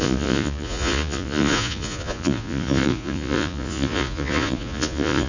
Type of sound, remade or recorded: remade